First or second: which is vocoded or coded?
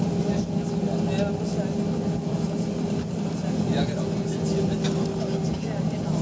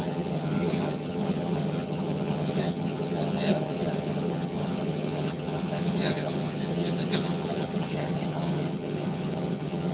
second